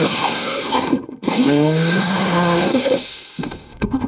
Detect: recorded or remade remade